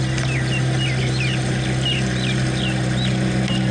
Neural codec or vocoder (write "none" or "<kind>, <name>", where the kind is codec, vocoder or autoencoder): none